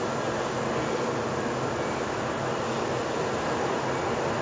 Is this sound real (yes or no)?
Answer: yes